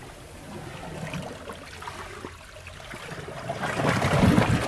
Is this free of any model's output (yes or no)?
yes